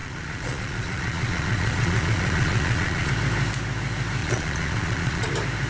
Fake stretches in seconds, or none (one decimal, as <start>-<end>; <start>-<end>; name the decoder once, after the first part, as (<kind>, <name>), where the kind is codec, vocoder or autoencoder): 0.0-3.1 (vocoder, Vocos); 4.2-5.3